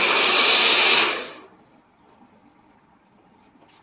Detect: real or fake real